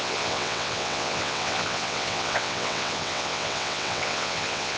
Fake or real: fake